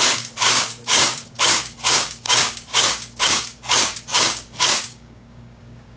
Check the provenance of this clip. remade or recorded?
remade